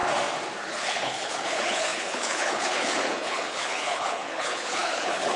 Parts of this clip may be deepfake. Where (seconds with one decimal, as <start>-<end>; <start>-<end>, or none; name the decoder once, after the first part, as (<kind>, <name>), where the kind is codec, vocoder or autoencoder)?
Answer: 0.6-5.4 (codec, HILCodec)